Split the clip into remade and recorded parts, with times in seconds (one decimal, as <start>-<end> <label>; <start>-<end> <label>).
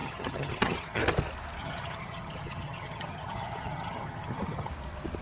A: 0.0-1.0 remade; 1.0-1.6 recorded; 1.6-4.7 remade; 4.7-5.2 recorded